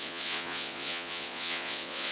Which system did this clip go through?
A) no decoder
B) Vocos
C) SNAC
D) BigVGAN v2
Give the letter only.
B